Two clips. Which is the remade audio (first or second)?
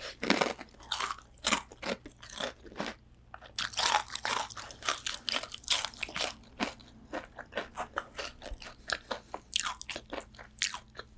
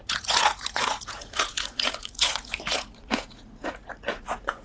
second